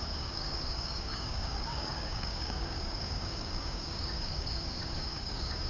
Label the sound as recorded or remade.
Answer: remade